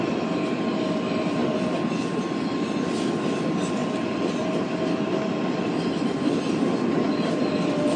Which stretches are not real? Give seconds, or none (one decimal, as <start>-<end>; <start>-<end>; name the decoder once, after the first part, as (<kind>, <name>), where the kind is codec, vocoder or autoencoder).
1.4-2.5 (vocoder, BigVGAN v2); 3.8-8.0